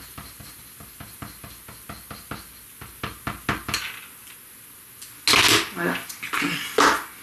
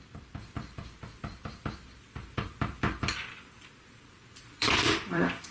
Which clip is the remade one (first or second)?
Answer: second